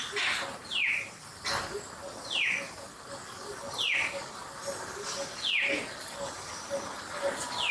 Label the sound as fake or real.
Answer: real